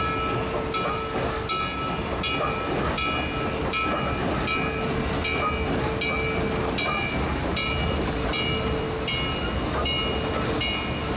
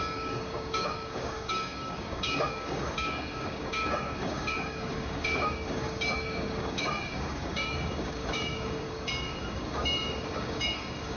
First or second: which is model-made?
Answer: second